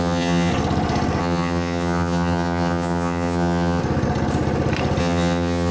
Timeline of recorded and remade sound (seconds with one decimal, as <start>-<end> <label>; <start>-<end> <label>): 0.0-0.5 remade; 0.5-1.2 recorded; 1.2-3.8 remade; 3.8-5.0 recorded; 5.0-5.7 remade